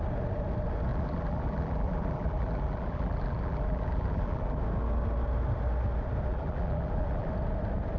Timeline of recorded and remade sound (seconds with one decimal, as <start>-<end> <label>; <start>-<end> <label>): 0.0-0.9 recorded; 0.9-4.6 remade; 4.6-6.3 recorded; 6.3-7.3 remade; 7.3-8.0 recorded